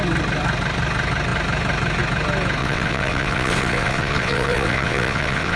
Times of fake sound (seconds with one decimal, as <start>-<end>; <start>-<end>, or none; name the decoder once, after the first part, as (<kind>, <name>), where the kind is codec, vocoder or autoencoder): 2.6-5.6 (vocoder, WaveNeXt)